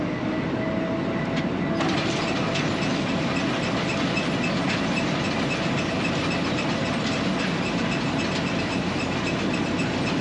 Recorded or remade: recorded